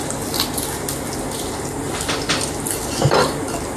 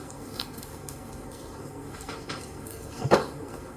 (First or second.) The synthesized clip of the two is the second